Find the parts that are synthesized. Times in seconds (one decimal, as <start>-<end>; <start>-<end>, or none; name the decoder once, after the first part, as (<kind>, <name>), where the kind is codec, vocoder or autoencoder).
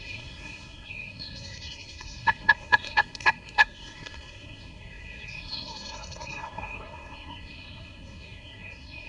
0.0-9.1 (codec, SNAC)